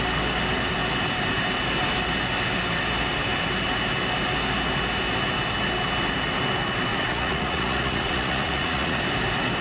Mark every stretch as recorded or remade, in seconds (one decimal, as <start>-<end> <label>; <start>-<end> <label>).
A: 0.0-6.9 recorded; 6.9-9.0 remade; 9.0-9.6 recorded